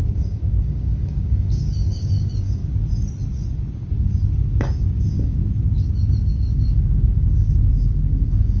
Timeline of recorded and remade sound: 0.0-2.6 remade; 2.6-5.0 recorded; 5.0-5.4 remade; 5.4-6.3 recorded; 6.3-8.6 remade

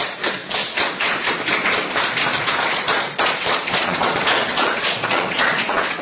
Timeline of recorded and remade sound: 0.0-2.3 recorded; 2.3-6.0 remade

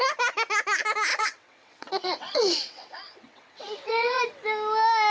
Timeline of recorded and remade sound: 0.0-1.1 recorded; 1.1-4.2 remade; 4.2-5.1 recorded

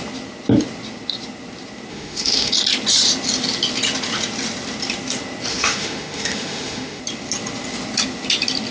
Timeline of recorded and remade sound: 0.0-1.9 recorded; 1.9-2.5 remade; 2.5-5.5 recorded; 5.5-7.0 remade; 7.0-8.7 recorded